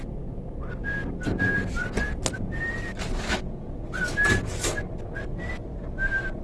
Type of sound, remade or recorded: recorded